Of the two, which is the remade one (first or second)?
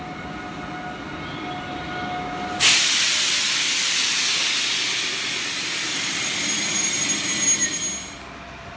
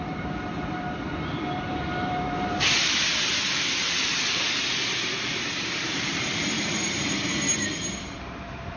second